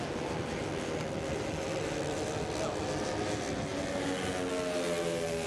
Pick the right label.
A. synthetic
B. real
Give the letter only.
B